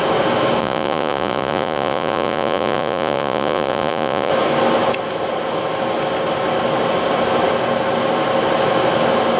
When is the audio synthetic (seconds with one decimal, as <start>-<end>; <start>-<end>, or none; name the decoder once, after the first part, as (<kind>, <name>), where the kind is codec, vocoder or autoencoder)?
0.6-4.3 (vocoder, Vocos)